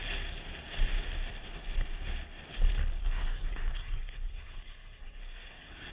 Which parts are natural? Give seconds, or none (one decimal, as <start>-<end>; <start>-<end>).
0.0-3.0

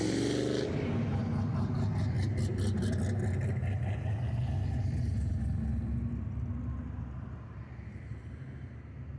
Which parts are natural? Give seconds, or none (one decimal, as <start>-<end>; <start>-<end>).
0.0-9.2

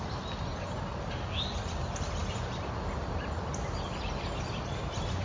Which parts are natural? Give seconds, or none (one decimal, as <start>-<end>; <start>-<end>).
0.0-5.2